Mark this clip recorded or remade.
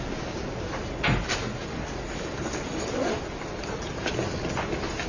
recorded